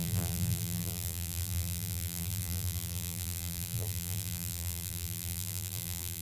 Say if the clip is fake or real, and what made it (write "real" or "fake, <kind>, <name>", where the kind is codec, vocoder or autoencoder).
fake, vocoder, BigVGAN v2